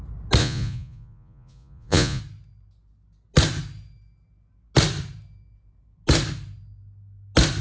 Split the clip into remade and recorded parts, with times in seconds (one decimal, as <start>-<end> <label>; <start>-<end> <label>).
0.0-0.4 recorded; 0.4-2.2 remade; 2.2-7.6 recorded